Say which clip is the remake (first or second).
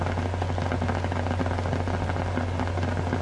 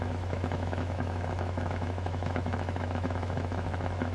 second